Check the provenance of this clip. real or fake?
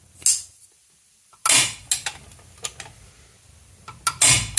real